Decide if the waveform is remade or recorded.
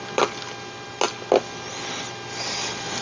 recorded